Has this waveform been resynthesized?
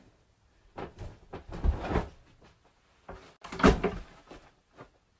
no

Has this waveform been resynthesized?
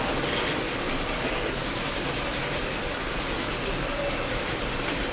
no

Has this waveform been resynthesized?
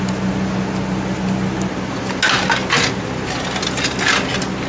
no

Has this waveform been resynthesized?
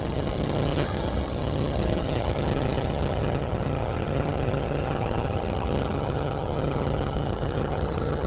yes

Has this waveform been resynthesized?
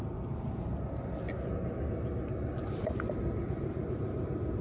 no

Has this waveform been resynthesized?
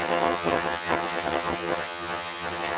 yes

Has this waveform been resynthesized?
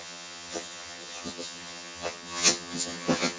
yes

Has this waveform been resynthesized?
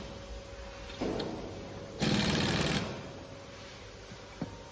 no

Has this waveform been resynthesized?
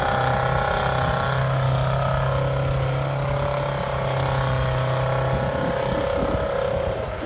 no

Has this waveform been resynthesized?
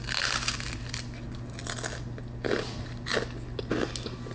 no